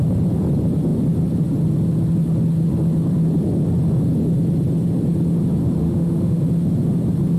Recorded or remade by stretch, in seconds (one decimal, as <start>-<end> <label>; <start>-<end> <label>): 0.0-5.8 recorded; 5.8-6.4 remade; 6.4-7.4 recorded